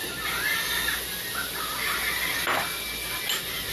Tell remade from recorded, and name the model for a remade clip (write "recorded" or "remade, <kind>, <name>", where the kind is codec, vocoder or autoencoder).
recorded